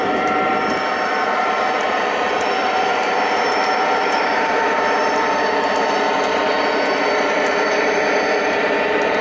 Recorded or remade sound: remade